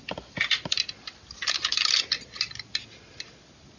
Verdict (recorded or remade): recorded